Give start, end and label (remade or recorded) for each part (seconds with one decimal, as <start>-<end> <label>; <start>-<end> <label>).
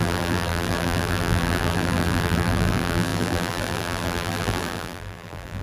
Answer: 0.0-5.6 remade